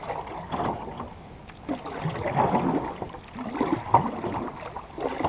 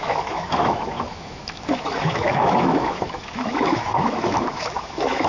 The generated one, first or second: second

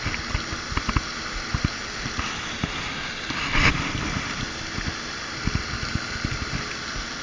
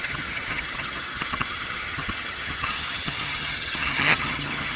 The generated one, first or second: second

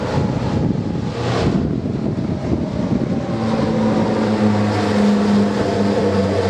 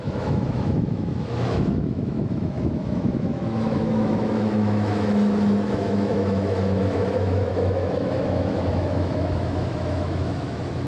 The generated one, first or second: second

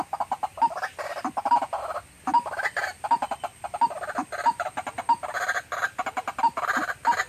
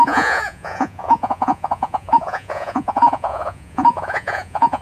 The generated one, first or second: second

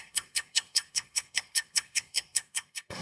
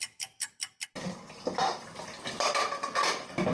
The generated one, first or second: first